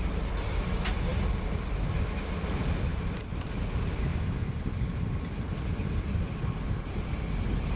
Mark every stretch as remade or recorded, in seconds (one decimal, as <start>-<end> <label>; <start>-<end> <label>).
0.0-4.1 recorded; 4.1-5.0 remade; 5.0-7.8 recorded